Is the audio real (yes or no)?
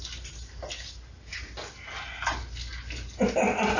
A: yes